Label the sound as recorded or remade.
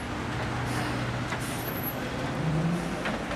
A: recorded